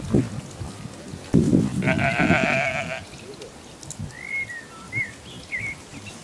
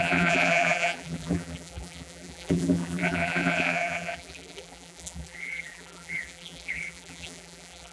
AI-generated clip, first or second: second